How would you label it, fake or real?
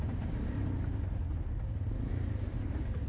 real